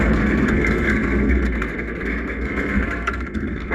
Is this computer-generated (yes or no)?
yes